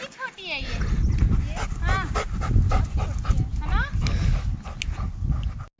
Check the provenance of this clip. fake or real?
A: real